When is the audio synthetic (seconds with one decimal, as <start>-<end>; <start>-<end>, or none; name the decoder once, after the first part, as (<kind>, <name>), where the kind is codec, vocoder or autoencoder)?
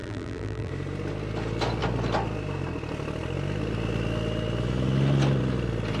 0.0-0.7 (vocoder, BigVGAN v2)